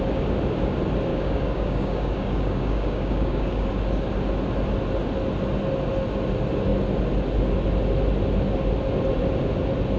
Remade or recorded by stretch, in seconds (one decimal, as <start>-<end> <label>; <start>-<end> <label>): 0.0-1.1 recorded; 1.1-3.7 remade; 3.7-10.0 recorded